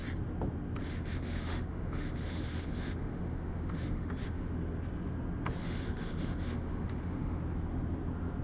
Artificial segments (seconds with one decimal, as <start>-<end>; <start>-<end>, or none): 0.8-4.5; 5.6-7.4

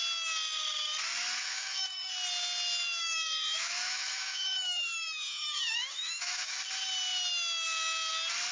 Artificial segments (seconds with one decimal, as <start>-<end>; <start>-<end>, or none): 1.4-2.1; 3.0-6.6

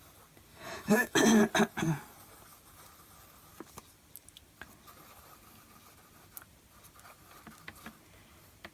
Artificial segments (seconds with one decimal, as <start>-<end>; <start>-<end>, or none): 0.5-1.4

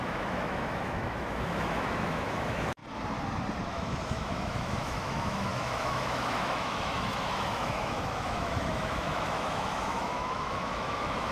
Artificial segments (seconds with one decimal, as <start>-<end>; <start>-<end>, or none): 0.0-2.8; 3.6-11.3

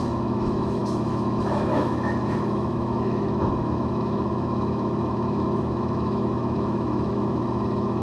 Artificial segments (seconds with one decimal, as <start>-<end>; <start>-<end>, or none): 0.0-8.0